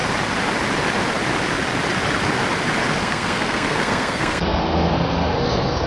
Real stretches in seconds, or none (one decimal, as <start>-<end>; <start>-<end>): 0.0-3.0

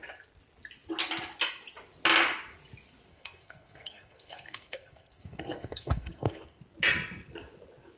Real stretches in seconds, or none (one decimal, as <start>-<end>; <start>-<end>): 0.0-3.1; 6.6-8.0

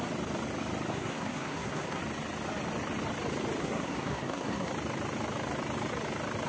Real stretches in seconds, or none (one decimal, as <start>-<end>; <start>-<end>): 0.0-0.9; 2.0-3.6; 4.7-6.5

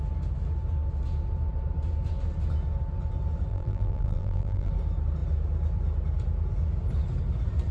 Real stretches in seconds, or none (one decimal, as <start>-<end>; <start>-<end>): 0.0-3.5; 4.7-7.7

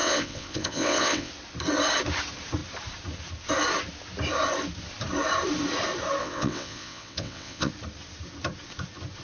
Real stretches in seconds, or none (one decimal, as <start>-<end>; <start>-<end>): 1.3-6.2; 7.7-9.2